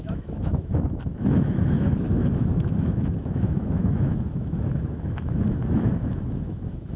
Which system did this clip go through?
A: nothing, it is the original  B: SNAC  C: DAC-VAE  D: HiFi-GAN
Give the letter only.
C